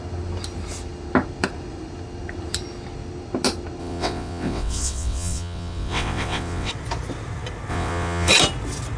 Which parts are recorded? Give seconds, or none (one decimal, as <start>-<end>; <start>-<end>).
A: 0.0-3.8; 6.7-7.7; 8.3-9.0